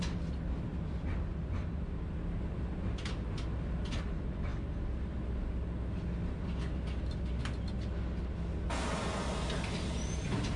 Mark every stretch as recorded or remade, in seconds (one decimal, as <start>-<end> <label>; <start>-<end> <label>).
0.0-10.6 recorded